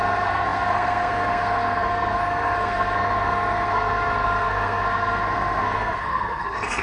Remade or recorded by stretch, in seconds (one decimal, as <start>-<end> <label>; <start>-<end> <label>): 0.0-6.8 remade